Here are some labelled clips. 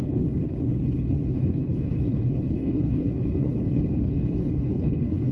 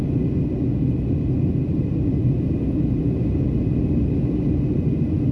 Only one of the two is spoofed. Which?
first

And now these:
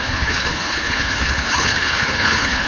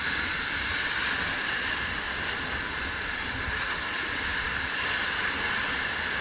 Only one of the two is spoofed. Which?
first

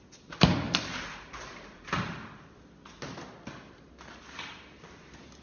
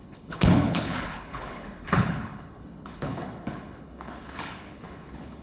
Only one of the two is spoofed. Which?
second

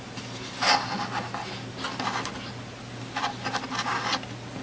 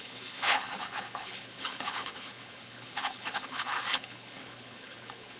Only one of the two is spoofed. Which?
second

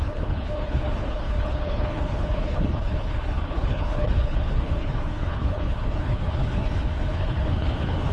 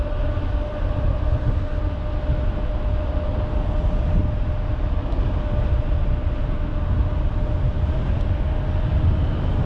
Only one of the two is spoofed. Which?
first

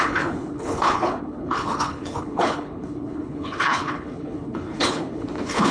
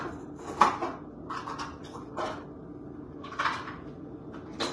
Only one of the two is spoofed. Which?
first